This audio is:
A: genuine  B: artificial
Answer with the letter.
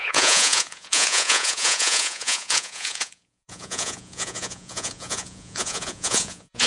B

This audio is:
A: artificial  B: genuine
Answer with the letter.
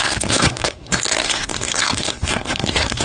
A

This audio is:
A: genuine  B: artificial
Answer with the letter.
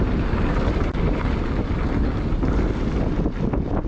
A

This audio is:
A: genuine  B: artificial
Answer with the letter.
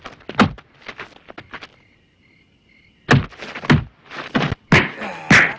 A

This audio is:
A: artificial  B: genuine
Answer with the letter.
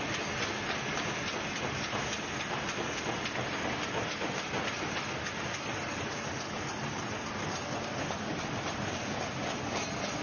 B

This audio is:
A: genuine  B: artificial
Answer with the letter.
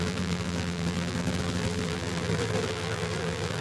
B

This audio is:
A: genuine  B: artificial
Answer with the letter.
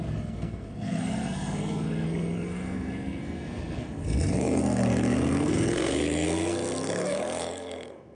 B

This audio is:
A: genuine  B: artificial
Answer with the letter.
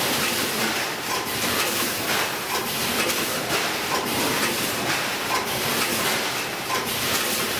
B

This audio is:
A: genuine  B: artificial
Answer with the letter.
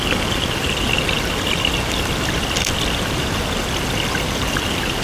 A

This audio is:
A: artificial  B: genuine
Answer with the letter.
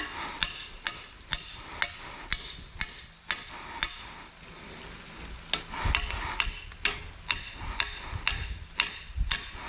B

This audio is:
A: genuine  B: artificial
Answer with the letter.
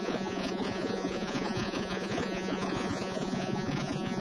B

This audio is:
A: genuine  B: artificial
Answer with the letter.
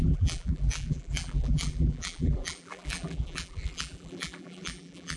B